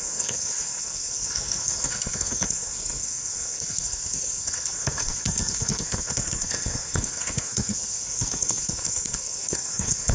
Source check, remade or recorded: remade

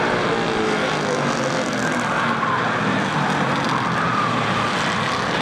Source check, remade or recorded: recorded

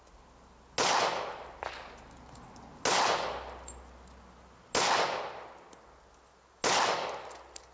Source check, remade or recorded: recorded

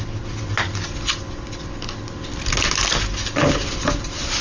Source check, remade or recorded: recorded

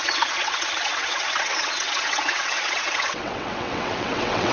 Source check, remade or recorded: remade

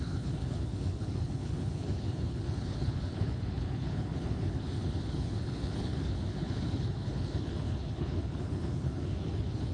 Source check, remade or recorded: remade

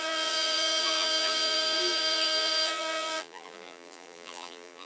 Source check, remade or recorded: remade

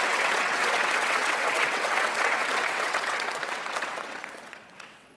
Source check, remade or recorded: remade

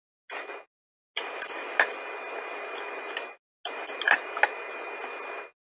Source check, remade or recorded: recorded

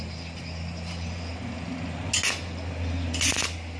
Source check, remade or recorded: recorded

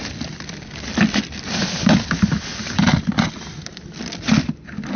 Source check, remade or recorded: recorded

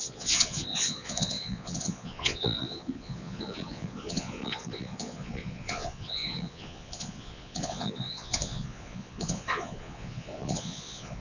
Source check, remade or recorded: remade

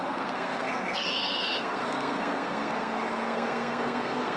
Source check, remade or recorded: remade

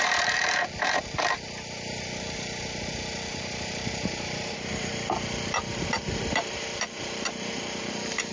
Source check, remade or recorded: remade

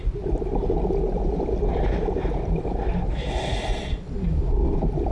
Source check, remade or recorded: recorded